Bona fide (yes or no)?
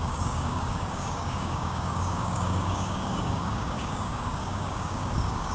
no